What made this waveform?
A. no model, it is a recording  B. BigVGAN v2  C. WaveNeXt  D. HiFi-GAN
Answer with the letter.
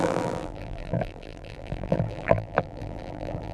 B